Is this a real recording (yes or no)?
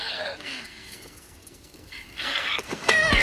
no